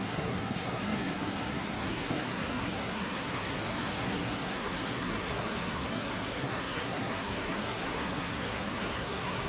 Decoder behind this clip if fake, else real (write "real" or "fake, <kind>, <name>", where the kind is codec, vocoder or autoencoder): fake, codec, SNAC